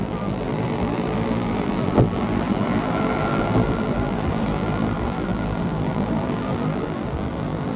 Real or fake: fake